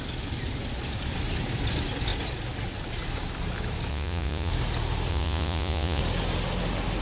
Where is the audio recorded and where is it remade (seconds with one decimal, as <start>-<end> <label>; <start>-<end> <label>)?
0.0-3.9 recorded; 3.9-4.5 remade; 4.5-5.1 recorded; 5.1-6.0 remade; 6.0-7.0 recorded